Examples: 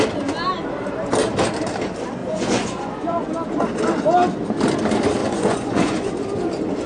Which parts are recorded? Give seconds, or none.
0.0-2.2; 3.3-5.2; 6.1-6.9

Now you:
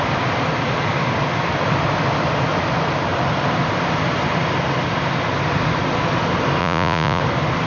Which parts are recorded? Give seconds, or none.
0.0-6.6; 7.2-7.7

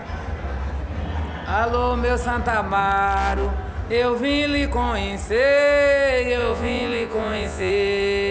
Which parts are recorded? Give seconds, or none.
0.0-6.4; 7.7-8.3

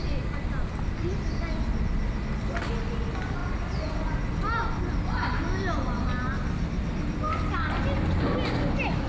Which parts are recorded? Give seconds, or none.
0.0-9.1